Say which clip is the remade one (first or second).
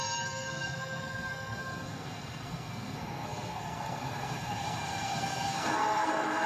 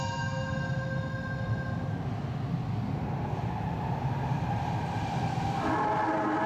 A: first